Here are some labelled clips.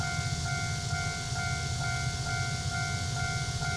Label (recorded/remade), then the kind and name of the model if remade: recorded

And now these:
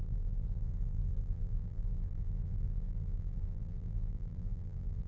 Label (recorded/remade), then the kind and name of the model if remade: remade, vocoder, BigVGAN v2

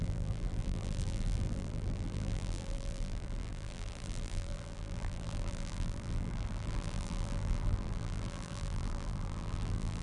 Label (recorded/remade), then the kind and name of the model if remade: remade, vocoder, BigVGAN v2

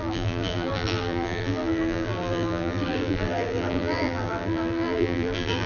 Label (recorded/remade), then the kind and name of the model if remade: remade, vocoder, BigVGAN v2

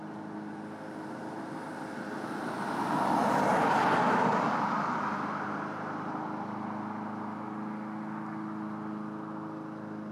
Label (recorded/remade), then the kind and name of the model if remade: recorded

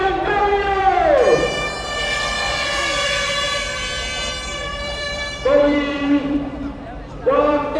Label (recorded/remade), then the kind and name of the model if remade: remade, vocoder, BigVGAN v2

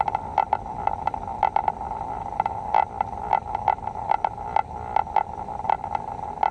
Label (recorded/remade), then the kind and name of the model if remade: recorded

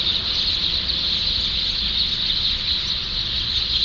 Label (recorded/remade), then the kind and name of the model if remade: recorded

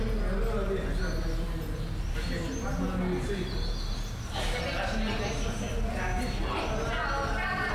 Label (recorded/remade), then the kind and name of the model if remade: recorded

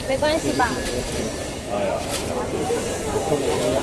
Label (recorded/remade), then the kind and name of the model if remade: remade, vocoder, BigVGAN v2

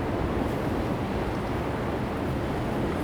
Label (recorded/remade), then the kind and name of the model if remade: recorded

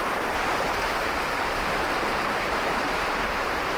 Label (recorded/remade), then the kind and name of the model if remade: remade, vocoder, BigVGAN v2